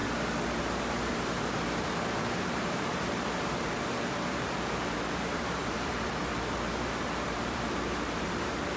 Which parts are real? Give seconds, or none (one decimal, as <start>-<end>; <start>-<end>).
0.0-0.6